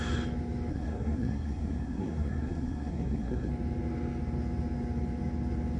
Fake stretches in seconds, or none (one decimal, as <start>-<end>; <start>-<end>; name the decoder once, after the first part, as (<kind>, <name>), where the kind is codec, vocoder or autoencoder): 0.7-3.5 (codec, SNAC)

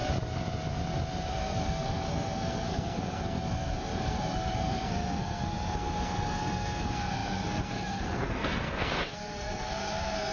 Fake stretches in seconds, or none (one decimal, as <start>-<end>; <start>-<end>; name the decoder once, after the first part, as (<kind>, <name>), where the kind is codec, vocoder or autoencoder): 1.3-10.3 (codec, SNAC)